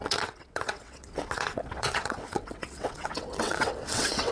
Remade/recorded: remade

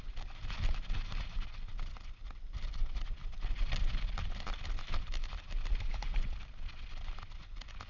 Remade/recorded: recorded